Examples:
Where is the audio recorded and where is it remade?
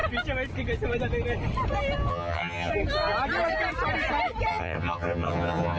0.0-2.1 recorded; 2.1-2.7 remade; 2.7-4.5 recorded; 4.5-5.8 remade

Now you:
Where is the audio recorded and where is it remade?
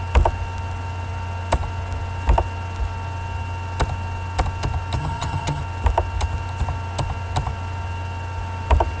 0.0-5.0 recorded; 5.0-5.6 remade; 5.6-9.0 recorded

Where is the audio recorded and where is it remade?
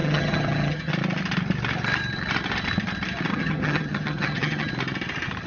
0.0-0.9 remade; 0.9-3.3 recorded; 3.3-4.7 remade; 4.7-5.5 recorded